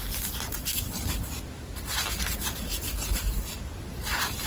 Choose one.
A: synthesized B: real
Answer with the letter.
B